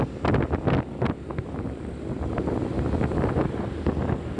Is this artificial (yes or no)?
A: no